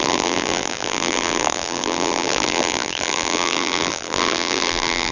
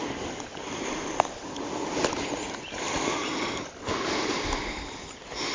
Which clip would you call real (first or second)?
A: second